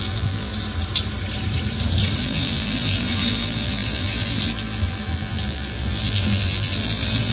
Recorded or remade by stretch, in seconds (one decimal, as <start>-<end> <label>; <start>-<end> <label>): 0.0-0.5 remade; 0.5-2.2 recorded; 2.2-7.3 remade